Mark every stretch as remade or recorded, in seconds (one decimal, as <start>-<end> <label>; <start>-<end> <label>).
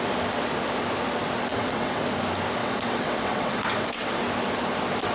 0.0-1.5 recorded; 1.5-2.0 remade; 2.0-2.6 recorded; 2.6-4.2 remade; 4.2-5.1 recorded